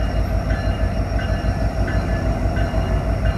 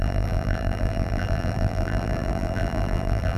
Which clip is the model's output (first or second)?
second